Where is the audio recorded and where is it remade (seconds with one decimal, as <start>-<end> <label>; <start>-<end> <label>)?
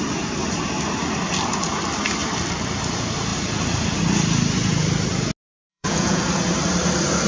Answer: 0.0-5.7 recorded; 5.7-6.2 remade; 6.2-7.3 recorded